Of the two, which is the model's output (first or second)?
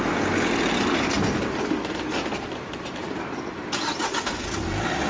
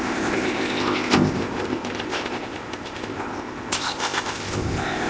second